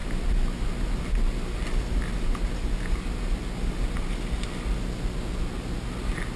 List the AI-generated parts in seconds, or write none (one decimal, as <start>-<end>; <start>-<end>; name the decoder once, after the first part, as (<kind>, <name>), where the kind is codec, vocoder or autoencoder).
none